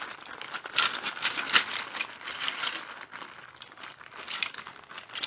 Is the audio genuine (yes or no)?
yes